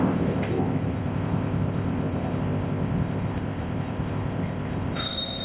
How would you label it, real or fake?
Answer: fake